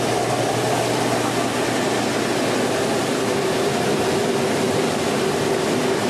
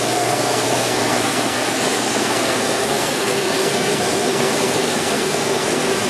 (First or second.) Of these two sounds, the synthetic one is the second